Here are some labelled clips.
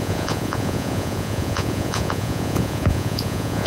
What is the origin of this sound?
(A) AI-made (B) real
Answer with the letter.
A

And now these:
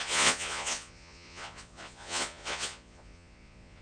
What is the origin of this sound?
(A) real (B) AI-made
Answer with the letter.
B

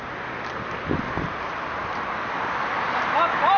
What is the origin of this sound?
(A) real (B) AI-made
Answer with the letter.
A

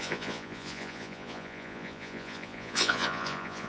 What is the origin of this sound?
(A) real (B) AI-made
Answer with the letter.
B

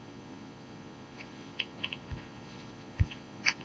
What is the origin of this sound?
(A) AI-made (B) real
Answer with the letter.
A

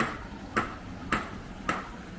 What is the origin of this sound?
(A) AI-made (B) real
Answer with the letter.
B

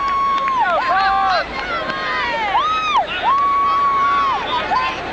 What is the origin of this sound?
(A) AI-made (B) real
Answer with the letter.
B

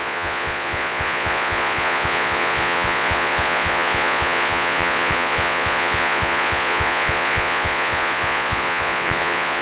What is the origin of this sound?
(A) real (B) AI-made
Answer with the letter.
B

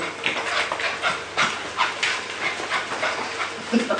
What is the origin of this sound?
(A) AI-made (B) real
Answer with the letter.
B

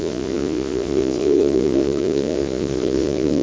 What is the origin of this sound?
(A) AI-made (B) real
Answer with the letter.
A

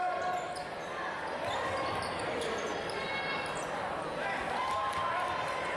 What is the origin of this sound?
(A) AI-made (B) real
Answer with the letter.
B